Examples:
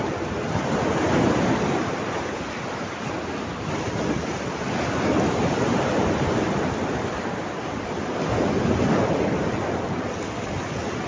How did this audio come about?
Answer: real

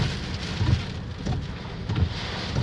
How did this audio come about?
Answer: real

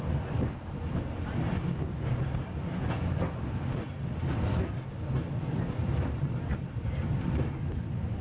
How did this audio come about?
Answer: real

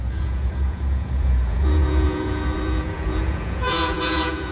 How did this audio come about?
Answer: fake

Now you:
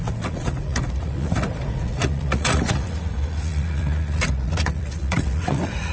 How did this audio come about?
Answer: fake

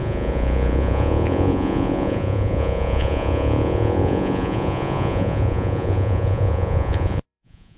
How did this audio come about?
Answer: fake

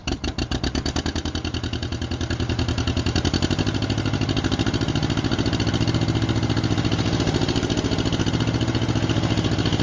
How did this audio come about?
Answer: real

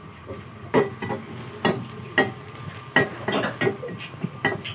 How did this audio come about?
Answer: real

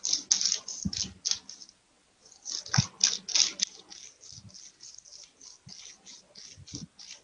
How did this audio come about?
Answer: real